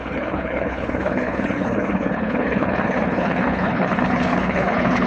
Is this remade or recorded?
remade